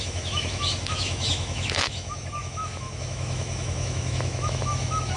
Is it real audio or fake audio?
fake